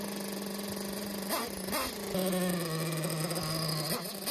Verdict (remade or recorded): recorded